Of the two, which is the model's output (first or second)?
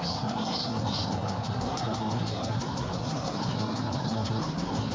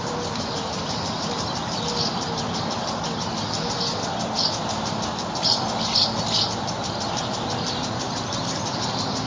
first